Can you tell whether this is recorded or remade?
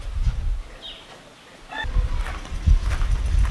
recorded